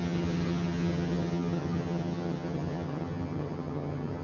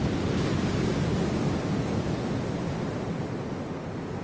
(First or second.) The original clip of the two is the second